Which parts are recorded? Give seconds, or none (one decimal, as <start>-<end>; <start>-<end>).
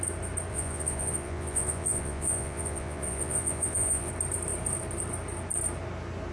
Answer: 0.0-0.5; 4.1-6.3